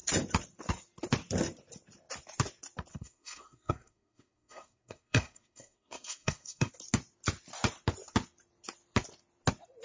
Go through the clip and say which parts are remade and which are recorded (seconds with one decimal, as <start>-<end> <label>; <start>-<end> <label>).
0.0-2.9 recorded; 2.9-6.7 remade; 6.7-9.8 recorded